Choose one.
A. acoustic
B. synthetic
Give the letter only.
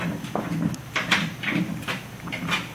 A